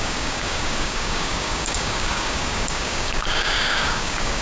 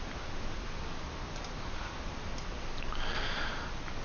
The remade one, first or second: first